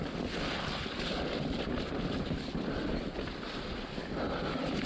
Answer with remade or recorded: recorded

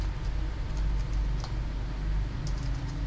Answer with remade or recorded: recorded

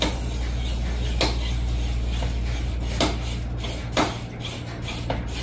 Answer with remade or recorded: recorded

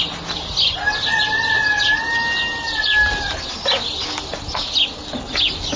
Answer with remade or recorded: recorded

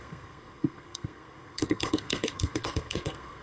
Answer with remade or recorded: remade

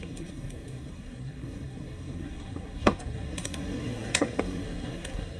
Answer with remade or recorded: remade